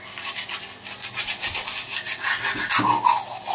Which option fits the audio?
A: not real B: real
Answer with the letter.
B